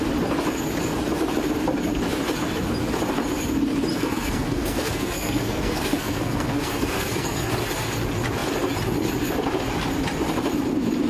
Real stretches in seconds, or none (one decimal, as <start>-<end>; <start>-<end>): 0.0-3.9; 7.5-11.1